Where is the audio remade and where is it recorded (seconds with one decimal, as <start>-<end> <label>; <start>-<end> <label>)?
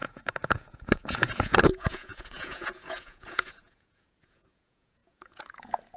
0.0-6.0 remade